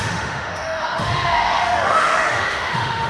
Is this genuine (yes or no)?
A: no